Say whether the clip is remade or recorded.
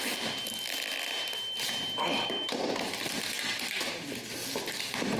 recorded